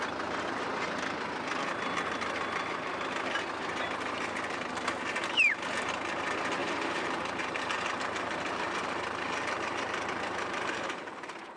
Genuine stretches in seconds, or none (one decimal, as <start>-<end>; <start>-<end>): 0.0-6.6